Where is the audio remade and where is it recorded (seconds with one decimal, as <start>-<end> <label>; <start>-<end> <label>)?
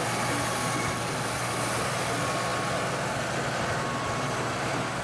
0.0-5.0 recorded